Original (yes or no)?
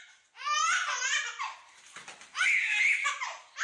yes